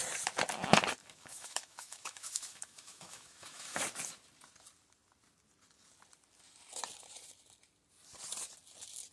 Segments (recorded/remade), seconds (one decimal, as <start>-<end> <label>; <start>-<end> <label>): 0.0-1.0 recorded; 1.0-3.8 remade; 3.8-9.1 recorded